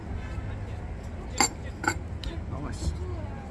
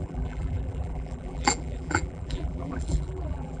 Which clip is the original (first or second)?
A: first